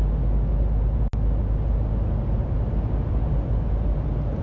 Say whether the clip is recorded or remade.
recorded